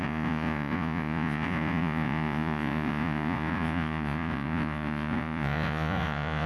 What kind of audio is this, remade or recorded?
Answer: remade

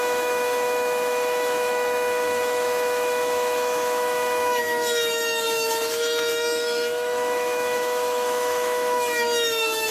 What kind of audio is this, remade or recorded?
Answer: remade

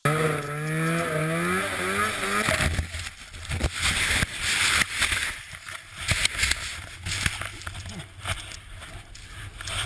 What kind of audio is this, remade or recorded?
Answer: recorded